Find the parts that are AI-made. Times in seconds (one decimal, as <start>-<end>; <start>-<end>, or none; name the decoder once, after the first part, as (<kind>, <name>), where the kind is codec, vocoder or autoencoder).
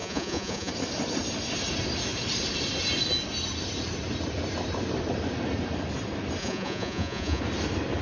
0.0-0.7 (vocoder, Vocos); 6.4-7.4